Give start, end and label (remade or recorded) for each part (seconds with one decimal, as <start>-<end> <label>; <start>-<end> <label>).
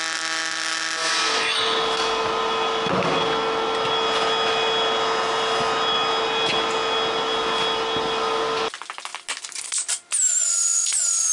0.0-11.3 recorded